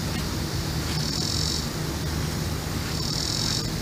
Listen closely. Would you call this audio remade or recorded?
recorded